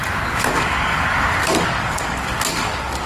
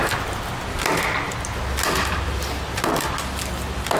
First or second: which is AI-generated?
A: first